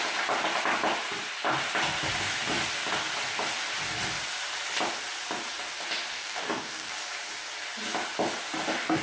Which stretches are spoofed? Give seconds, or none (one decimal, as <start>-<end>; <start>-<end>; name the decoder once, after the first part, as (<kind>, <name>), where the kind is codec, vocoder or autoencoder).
6.1-6.9 (codec, DAC)